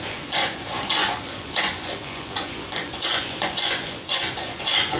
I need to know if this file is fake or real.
fake